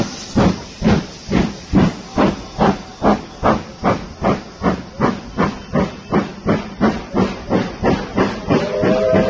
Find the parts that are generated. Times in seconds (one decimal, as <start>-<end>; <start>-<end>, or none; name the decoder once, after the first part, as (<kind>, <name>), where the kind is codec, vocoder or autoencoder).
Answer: 0.0-2.9 (vocoder, BigVGAN v2); 6.5-9.3